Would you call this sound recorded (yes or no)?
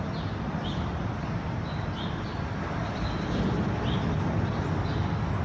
yes